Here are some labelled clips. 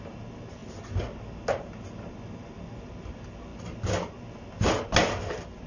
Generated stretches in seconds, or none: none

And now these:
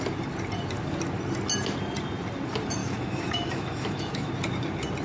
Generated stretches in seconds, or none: 2.8-4.3 (autoencoder, DAC-VAE)

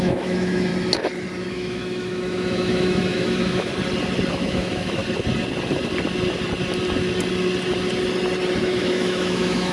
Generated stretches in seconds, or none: 0.0-0.7 (autoencoder, DAC-VAE); 1.5-3.7; 4.3-5.0; 8.6-9.7

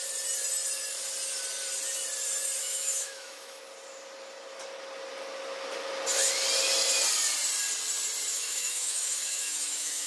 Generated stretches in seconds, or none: 2.6-3.6 (autoencoder, DAC-VAE); 8.3-10.1

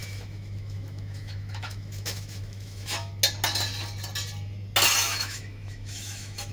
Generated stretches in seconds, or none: 0.0-3.1 (autoencoder, DAC-VAE); 5.1-6.5